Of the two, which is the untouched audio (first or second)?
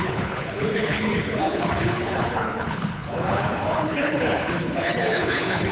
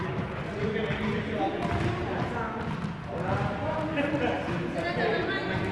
second